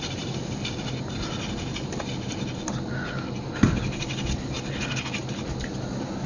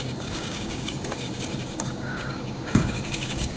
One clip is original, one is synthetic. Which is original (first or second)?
first